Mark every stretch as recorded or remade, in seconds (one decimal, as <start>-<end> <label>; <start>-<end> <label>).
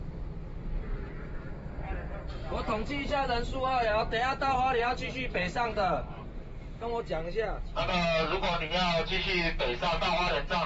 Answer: 0.0-2.4 recorded; 2.4-7.1 remade; 7.1-10.7 recorded